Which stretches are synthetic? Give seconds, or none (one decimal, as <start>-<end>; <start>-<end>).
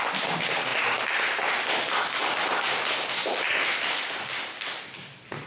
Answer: none